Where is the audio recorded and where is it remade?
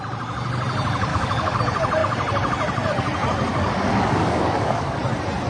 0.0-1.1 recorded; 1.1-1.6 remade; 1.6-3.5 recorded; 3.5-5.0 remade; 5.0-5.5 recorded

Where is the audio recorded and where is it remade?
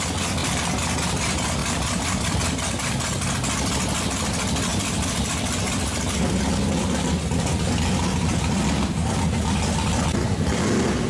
0.0-1.6 recorded; 1.6-2.5 remade; 2.5-4.7 recorded; 4.7-9.2 remade; 9.2-11.1 recorded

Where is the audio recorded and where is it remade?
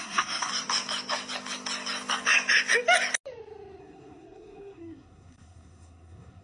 0.0-0.5 remade; 0.5-3.8 recorded; 3.8-6.4 remade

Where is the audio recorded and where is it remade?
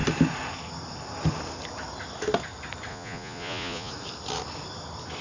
0.0-2.9 recorded; 2.9-3.9 remade; 3.9-5.2 recorded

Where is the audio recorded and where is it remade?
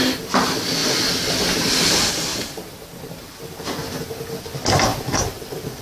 0.0-0.8 remade; 0.8-1.3 recorded; 1.3-2.3 remade; 2.3-3.4 recorded; 3.4-5.8 remade